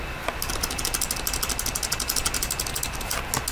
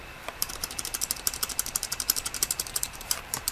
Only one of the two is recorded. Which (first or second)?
first